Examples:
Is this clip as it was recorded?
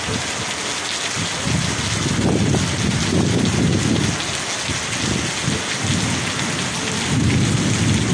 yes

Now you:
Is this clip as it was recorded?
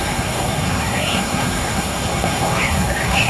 no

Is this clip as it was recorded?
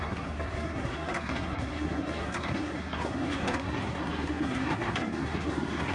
no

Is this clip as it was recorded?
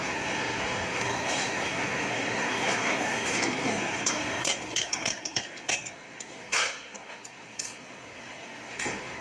no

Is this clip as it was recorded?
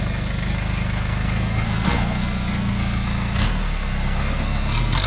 no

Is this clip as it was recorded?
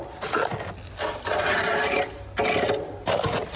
yes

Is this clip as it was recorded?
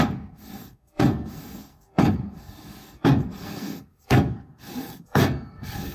no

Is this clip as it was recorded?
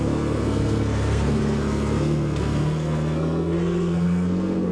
no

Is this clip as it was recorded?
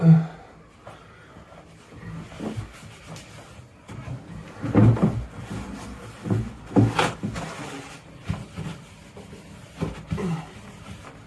yes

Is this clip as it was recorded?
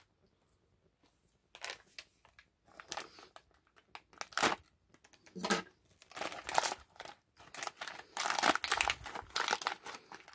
yes